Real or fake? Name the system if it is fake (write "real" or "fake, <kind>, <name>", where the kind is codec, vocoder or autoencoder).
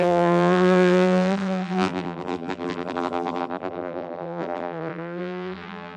fake, vocoder, BigVGAN v2